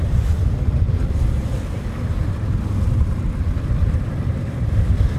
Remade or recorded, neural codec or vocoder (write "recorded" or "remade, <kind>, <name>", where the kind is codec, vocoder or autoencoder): recorded